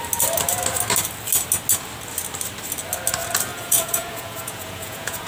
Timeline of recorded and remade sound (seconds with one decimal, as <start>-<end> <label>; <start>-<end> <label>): 0.0-3.5 recorded; 3.5-5.3 remade